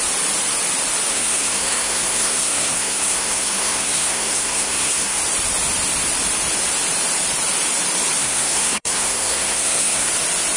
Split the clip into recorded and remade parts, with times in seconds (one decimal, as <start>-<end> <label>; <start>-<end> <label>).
0.0-1.1 recorded; 1.1-5.2 remade; 5.2-8.2 recorded; 8.2-10.1 remade; 10.1-10.6 recorded